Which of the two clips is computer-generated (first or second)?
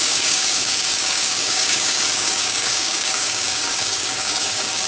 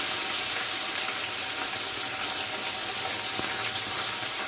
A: first